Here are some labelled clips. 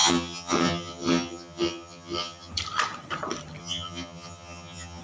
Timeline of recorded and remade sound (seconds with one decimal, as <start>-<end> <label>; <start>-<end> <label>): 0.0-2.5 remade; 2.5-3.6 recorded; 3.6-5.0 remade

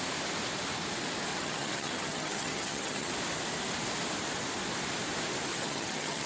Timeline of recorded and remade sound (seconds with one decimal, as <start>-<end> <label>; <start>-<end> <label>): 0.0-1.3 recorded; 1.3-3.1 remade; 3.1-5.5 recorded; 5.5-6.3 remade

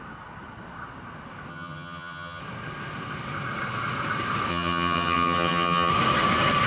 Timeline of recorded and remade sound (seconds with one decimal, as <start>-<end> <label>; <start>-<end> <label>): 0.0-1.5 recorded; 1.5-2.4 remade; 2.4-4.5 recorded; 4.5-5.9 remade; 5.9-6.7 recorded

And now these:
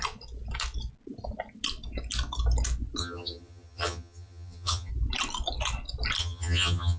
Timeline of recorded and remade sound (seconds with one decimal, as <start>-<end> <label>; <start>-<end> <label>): 0.0-3.0 recorded; 3.0-4.9 remade; 4.9-6.2 recorded; 6.2-7.0 remade